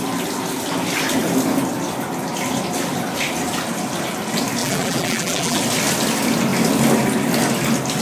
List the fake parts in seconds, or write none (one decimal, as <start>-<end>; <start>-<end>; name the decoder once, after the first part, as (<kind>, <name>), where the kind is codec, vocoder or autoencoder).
4.6-5.6 (vocoder, BigVGAN v2)